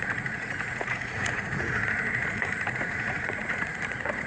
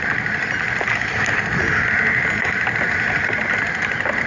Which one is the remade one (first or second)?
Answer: first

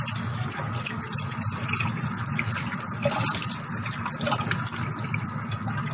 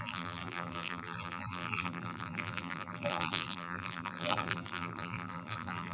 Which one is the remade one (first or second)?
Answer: second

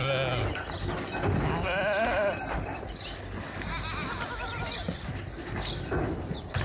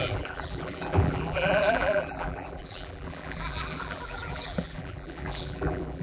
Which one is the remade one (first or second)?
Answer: second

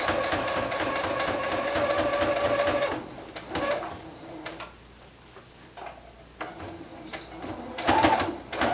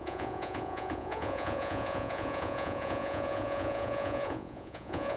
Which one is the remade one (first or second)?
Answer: second